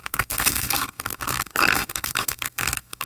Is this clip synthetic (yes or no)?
yes